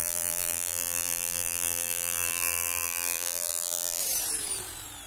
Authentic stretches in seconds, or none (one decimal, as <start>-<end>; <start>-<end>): 4.0-5.1